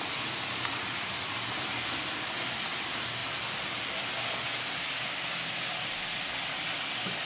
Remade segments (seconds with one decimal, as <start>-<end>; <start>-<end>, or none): none